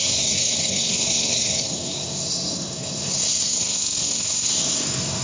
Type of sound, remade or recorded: remade